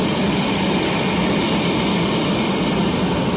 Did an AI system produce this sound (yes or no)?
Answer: no